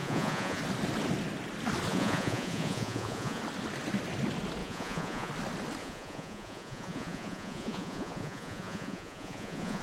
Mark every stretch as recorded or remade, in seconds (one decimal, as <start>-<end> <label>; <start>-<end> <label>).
0.0-0.6 remade; 0.6-1.9 recorded; 1.9-3.4 remade; 3.4-4.6 recorded; 4.6-5.3 remade; 5.3-5.8 recorded; 5.8-9.8 remade

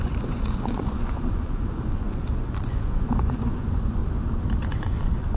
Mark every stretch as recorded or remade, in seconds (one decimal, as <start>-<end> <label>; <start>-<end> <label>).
0.0-4.0 remade; 4.0-4.7 recorded; 4.7-5.4 remade

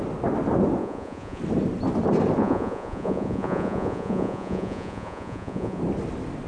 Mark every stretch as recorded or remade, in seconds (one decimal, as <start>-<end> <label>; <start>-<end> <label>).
0.0-0.8 recorded; 0.8-1.4 remade; 1.4-2.4 recorded; 2.4-5.8 remade; 5.8-6.5 recorded

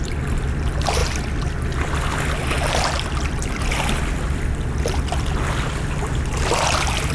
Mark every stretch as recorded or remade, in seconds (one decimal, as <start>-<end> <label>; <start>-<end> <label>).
0.0-7.1 recorded

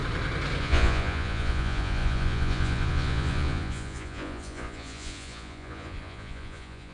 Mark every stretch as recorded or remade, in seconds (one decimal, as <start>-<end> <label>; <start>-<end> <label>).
0.0-0.6 recorded; 0.6-6.9 remade